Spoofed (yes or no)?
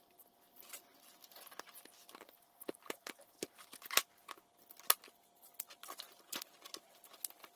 no